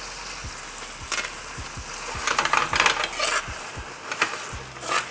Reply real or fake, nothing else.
real